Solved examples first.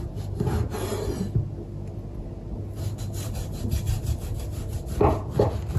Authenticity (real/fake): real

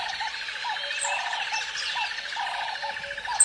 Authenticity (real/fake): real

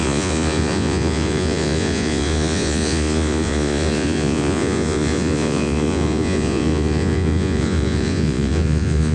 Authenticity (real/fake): fake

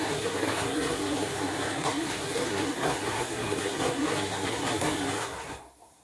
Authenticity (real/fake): fake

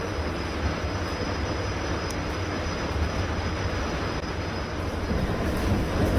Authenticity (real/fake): real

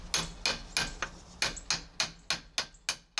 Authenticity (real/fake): real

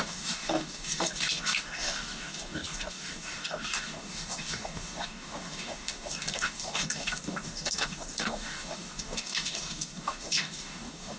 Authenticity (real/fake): fake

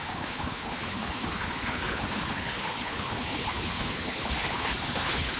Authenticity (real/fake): fake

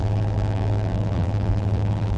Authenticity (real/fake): fake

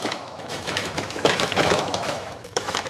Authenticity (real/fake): fake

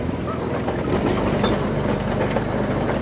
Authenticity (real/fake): real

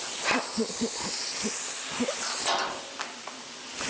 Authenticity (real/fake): real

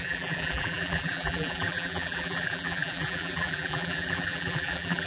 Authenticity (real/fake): fake